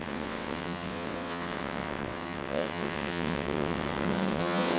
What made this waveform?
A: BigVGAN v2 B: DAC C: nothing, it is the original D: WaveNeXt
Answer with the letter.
D